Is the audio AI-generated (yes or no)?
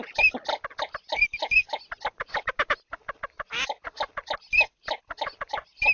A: no